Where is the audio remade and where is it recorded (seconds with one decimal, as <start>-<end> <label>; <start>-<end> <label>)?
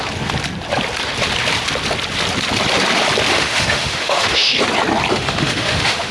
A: 0.0-3.3 recorded; 3.3-4.6 remade; 4.6-5.1 recorded; 5.1-6.1 remade